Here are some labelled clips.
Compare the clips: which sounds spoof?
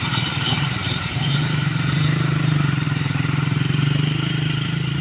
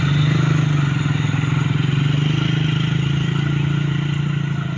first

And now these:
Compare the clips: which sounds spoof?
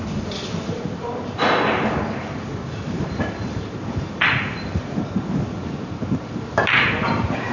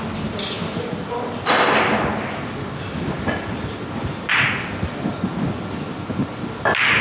first